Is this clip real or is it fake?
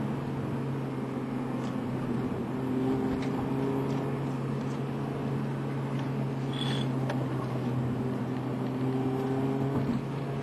real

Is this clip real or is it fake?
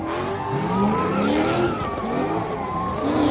real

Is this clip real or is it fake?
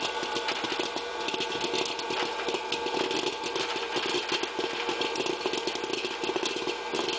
real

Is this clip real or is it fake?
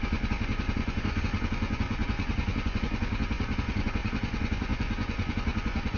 fake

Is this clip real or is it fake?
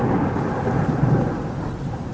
real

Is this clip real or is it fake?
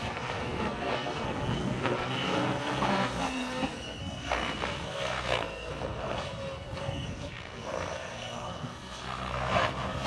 fake